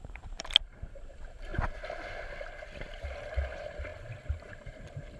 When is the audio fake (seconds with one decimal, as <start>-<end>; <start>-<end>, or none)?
0.0-1.5; 3.0-5.2